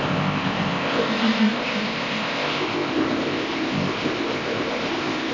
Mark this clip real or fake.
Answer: fake